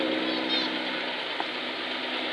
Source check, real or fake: real